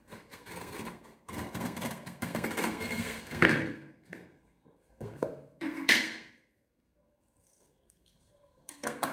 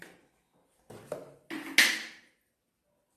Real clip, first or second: second